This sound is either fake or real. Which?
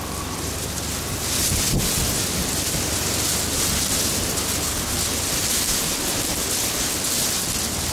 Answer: real